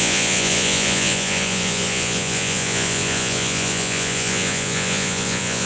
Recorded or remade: remade